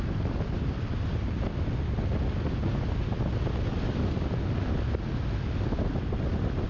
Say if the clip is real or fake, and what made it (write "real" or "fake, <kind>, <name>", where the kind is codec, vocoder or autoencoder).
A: real